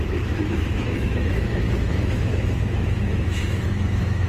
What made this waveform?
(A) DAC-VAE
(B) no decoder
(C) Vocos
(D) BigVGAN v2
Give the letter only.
A